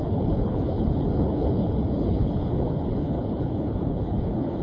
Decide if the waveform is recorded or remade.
remade